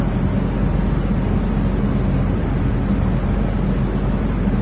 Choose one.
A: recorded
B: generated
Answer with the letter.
A